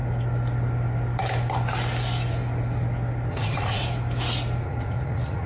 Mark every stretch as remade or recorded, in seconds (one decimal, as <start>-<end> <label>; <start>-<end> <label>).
0.0-3.3 recorded; 3.3-3.8 remade; 3.8-4.6 recorded; 4.6-5.5 remade